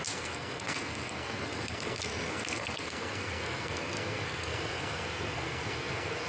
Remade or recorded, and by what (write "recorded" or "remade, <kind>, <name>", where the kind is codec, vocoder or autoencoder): remade, codec, SNAC